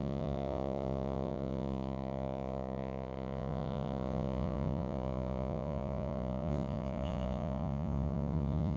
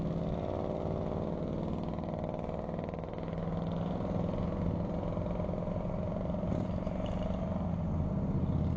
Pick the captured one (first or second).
second